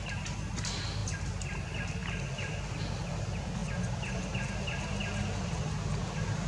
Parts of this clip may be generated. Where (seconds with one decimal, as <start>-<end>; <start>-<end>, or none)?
none